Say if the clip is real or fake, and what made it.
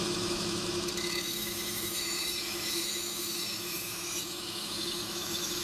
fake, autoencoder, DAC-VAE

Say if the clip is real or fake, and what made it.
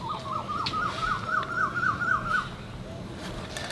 real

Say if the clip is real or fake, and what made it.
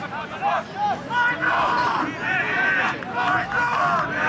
real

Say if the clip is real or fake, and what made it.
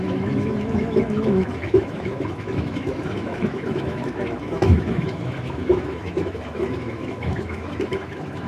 fake, autoencoder, DAC-VAE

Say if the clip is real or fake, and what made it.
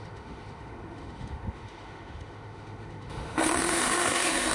fake, autoencoder, DAC-VAE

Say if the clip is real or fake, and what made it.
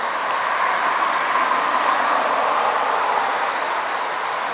real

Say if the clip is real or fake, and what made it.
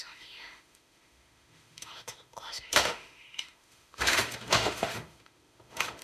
fake, autoencoder, DAC-VAE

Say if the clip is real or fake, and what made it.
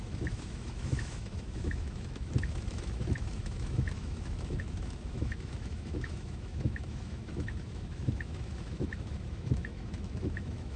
fake, autoencoder, DAC-VAE